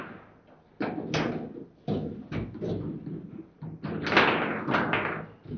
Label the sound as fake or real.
real